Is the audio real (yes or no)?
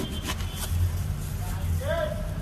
yes